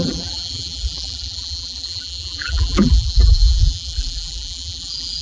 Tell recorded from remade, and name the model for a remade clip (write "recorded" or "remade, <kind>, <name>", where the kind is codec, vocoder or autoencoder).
remade, vocoder, BigVGAN v2